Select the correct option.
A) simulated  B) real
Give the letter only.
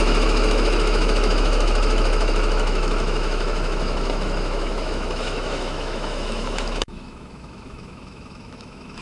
A